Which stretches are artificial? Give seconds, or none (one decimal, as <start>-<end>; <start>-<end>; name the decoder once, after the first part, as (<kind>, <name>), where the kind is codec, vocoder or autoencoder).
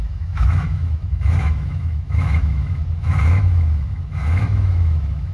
0.0-5.3 (autoencoder, DAC-VAE)